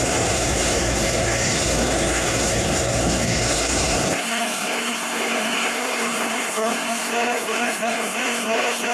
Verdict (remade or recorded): remade